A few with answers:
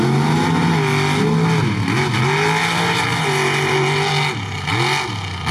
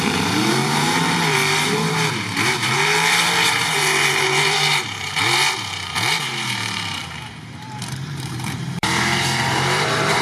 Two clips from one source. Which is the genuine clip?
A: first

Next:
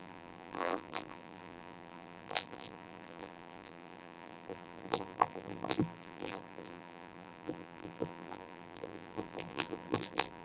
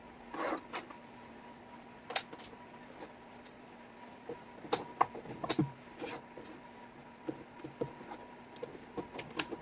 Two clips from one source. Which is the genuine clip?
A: second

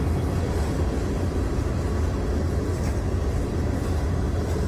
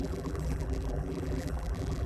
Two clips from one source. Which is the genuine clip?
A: first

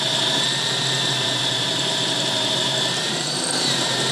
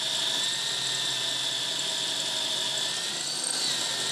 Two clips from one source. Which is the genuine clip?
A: second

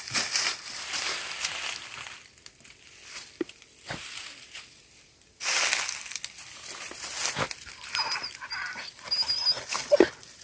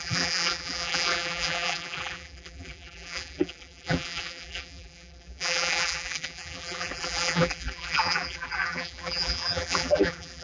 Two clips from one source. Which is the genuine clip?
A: first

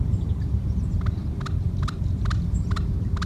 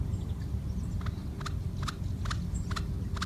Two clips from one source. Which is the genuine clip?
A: second